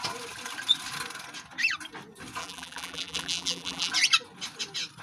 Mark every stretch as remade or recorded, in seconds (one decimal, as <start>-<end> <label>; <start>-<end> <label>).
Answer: 0.0-2.4 recorded; 2.4-3.9 remade; 3.9-5.0 recorded